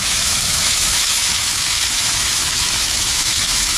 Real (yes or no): no